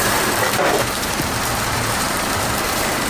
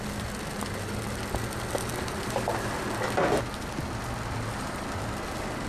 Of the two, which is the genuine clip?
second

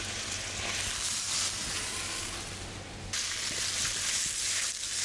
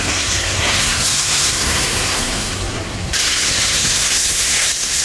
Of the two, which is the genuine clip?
first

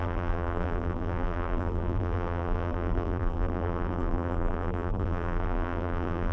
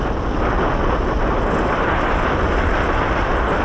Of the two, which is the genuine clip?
second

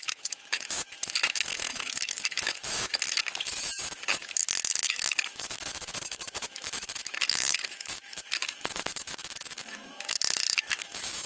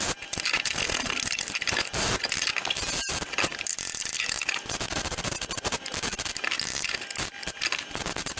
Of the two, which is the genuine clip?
second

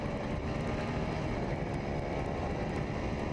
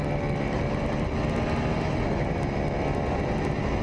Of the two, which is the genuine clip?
second